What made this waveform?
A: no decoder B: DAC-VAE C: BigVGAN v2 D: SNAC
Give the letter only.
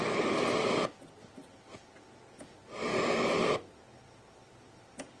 A